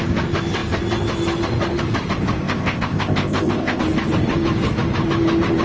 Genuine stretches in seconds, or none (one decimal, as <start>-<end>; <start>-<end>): 0.0-2.4; 3.8-5.6